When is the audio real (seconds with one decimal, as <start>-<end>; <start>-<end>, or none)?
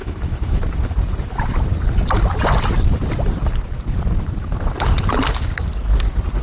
0.6-6.4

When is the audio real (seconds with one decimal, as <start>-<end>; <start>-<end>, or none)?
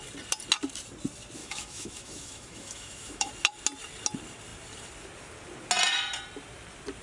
0.0-1.4; 3.3-7.0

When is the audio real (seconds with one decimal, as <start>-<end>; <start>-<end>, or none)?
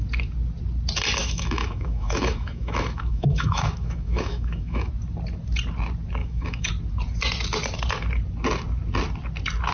0.0-1.2; 4.9-6.2; 6.7-9.7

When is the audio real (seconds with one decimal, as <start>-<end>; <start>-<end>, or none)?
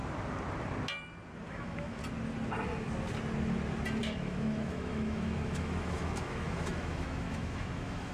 0.0-1.5; 2.0-4.0